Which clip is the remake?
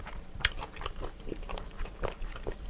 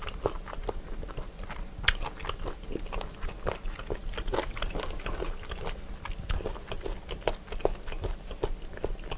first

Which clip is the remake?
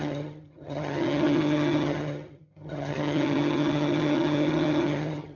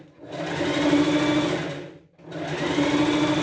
first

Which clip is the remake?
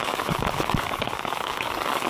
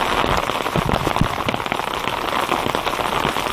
first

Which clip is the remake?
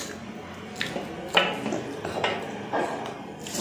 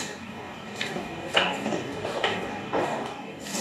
second